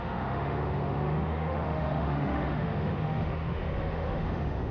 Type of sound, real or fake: fake